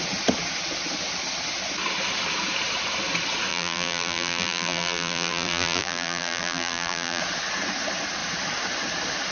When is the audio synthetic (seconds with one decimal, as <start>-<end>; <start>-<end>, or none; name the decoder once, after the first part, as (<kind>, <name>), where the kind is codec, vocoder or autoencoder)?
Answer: 3.5-7.2 (vocoder, BigVGAN v2)